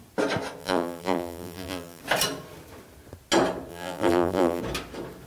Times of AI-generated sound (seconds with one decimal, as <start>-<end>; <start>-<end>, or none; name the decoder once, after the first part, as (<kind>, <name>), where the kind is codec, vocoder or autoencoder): 0.6-2.0 (vocoder, BigVGAN v2); 3.7-4.6